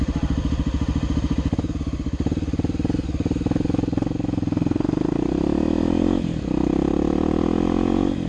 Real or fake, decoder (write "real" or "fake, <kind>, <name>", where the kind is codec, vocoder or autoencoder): real